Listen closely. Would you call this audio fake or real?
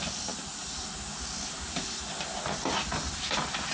real